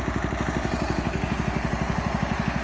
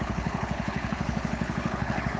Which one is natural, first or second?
first